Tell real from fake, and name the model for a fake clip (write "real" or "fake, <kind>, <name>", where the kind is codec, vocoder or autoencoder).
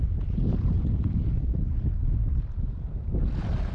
real